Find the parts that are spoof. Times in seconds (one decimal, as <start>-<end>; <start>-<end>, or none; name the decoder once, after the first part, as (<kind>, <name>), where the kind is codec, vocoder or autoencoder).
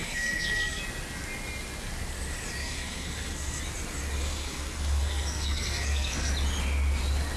0.0-0.8 (codec, SNAC); 2.6-3.6; 4.2-6.3